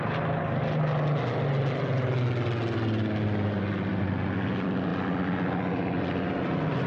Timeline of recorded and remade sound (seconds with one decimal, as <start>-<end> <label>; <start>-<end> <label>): 0.0-6.9 recorded